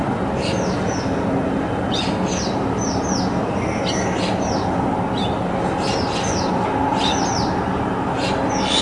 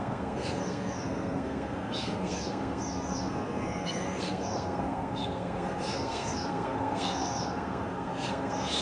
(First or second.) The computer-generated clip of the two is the second